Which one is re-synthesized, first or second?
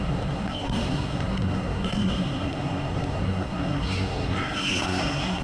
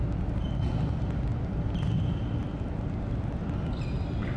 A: first